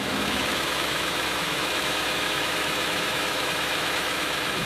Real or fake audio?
fake